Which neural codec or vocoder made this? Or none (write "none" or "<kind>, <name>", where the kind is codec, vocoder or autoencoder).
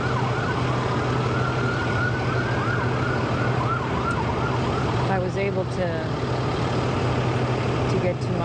none